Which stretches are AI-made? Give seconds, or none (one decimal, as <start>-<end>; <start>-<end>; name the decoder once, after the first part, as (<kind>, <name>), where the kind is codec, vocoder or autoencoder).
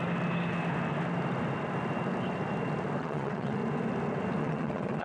3.0-3.6 (vocoder, WaveNeXt); 4.4-5.0